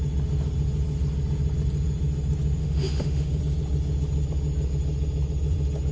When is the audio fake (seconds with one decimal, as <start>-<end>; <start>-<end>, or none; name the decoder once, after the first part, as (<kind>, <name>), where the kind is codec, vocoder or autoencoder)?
2.6-3.4 (autoencoder, DAC-VAE)